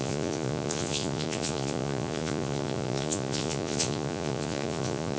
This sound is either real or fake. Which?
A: fake